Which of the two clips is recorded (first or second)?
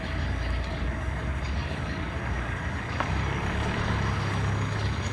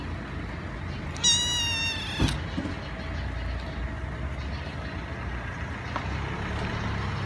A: second